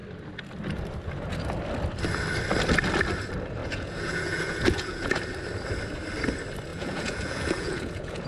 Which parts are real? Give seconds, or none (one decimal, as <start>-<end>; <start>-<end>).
0.0-3.6; 5.2-6.7